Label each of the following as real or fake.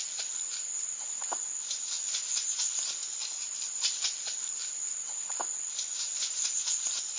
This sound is real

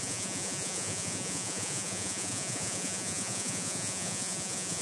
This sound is fake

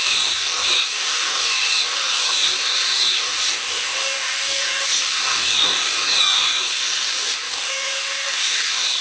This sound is fake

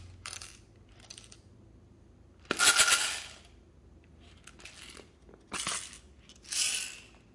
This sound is real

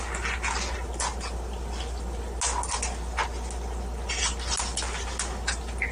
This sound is real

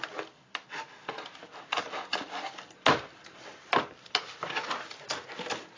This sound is real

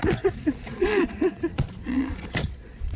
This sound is fake